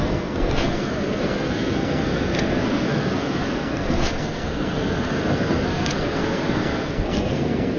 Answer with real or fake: fake